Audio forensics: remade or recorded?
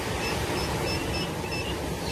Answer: remade